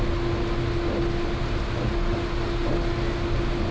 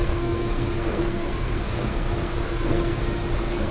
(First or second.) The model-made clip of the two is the second